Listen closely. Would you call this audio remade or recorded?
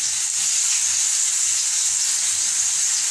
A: recorded